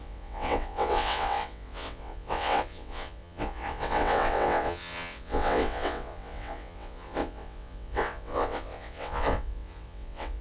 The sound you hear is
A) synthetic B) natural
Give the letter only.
A